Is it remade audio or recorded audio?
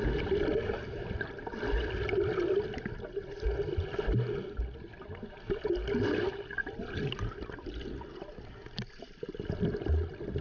recorded